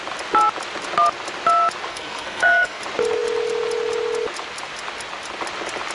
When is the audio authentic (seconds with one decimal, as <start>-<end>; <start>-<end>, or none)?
0.0-1.9; 2.8-5.9